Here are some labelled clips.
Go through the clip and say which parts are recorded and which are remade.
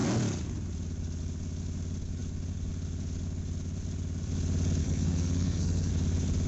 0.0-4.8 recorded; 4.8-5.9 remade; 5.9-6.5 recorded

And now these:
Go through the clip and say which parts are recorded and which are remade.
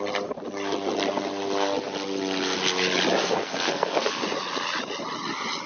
0.0-3.2 recorded; 3.2-4.2 remade; 4.2-5.7 recorded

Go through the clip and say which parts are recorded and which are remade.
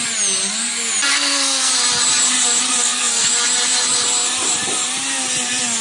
0.0-1.1 recorded; 1.1-1.7 remade; 1.7-2.8 recorded; 2.8-3.3 remade; 3.3-5.8 recorded